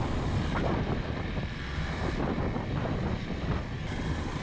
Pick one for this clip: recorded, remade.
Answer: recorded